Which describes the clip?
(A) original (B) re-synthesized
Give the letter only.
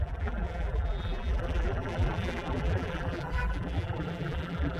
B